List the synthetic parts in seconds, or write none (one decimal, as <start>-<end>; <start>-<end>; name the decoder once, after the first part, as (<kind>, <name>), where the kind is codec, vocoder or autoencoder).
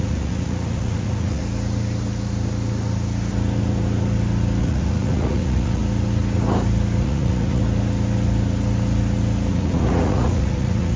0.0-1.4 (vocoder, Vocos); 4.6-5.8; 7.0-7.6; 9.5-11.0